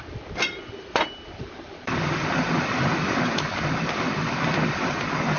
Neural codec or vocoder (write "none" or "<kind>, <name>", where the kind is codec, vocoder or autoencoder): none